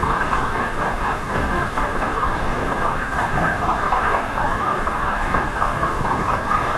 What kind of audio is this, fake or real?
fake